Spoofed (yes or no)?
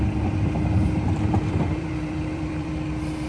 yes